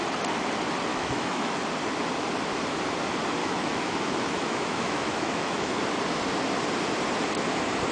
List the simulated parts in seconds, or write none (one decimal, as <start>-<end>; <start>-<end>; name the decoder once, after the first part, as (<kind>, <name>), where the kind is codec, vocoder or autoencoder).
0.9-1.6 (autoencoder, DAC-VAE); 3.4-5.8